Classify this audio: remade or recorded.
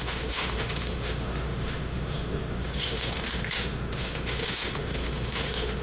remade